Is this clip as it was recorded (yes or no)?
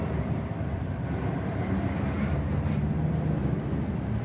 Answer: yes